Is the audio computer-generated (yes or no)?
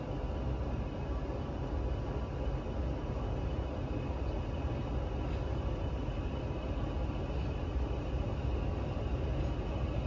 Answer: no